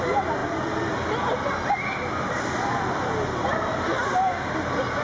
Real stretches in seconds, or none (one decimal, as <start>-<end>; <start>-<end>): 0.0-5.0

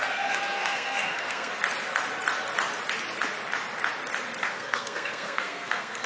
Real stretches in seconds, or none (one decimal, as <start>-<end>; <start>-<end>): 1.5-4.4

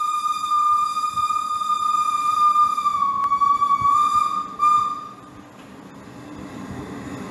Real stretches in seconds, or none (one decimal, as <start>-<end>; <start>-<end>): 0.0-7.3

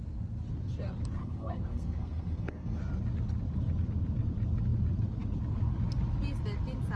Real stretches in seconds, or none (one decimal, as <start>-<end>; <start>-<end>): 0.0-1.2; 2.8-7.0